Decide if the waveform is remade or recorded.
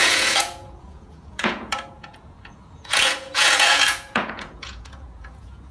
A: remade